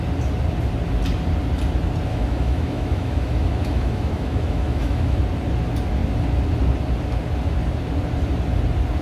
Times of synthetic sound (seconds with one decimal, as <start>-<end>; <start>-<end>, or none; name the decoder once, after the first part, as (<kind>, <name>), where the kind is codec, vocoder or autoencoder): 2.1-5.2 (autoencoder, DAC-VAE)